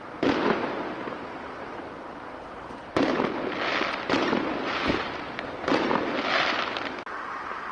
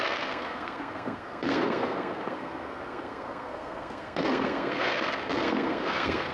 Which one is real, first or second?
first